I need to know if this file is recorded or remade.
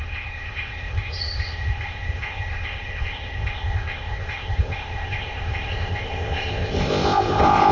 remade